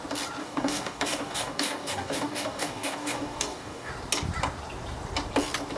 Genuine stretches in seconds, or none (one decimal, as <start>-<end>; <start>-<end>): 0.0-0.4; 3.9-5.8